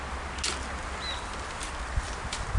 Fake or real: real